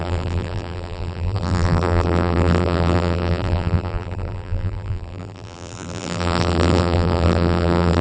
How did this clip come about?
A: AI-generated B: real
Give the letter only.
A